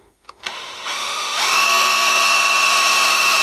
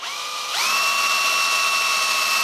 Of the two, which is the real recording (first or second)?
second